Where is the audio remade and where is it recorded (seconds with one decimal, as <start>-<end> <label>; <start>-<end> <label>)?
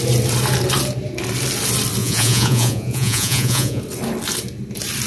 0.0-2.0 recorded; 2.0-3.8 remade; 3.8-5.1 recorded